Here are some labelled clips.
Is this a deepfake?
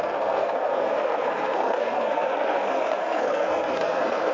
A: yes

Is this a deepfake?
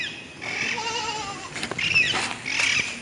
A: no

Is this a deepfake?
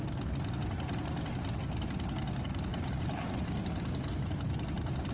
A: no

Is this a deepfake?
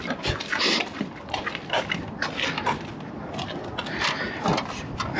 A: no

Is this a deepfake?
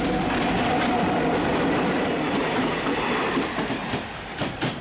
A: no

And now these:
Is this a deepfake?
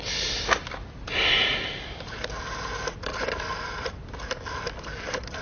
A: no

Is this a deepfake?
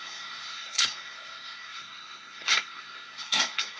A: yes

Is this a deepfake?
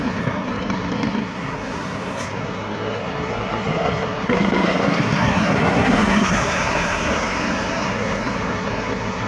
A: yes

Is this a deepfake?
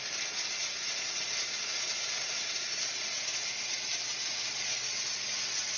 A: no